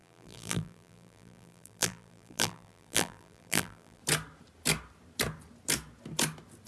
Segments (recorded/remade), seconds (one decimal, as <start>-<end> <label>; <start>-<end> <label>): 0.0-4.0 remade; 4.0-6.7 recorded